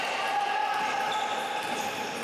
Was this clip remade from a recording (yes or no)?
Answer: no